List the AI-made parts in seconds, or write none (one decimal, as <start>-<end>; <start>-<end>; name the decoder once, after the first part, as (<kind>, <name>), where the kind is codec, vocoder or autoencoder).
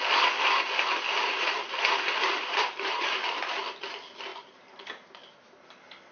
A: 1.2-3.5 (vocoder, BigVGAN v2); 4.3-4.9